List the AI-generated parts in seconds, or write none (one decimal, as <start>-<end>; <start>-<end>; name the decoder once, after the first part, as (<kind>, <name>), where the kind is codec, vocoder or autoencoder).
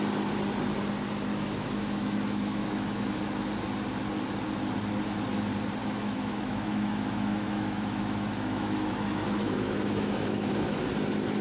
1.3-3.0 (autoencoder, DAC-VAE); 5.8-10.8